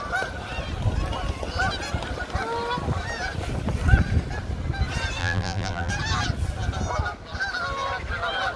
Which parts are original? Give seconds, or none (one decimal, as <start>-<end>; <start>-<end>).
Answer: 0.0-5.2; 5.9-8.6